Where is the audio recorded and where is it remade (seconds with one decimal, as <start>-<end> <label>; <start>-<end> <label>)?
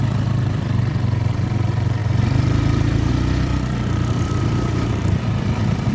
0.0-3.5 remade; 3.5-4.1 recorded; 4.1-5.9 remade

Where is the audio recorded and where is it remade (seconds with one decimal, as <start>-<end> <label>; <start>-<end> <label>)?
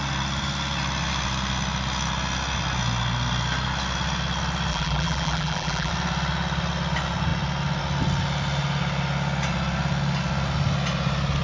0.0-4.7 recorded; 4.7-5.9 remade; 5.9-11.4 recorded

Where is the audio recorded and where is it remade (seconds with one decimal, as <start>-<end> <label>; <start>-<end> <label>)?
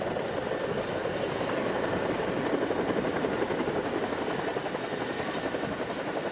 0.0-1.0 recorded; 1.0-2.5 remade; 2.5-6.3 recorded